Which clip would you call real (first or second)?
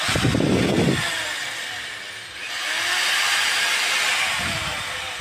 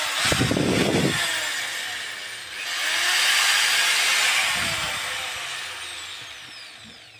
second